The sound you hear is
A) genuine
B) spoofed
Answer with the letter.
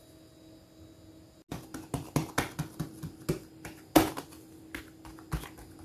A